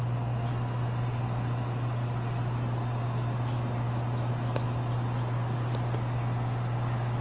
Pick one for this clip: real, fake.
real